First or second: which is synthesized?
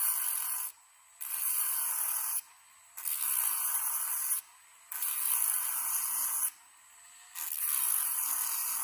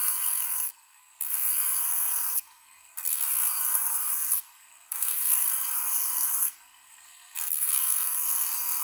second